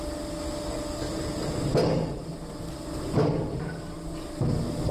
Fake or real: real